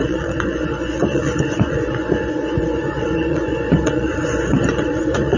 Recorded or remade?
remade